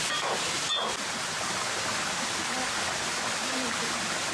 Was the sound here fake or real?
real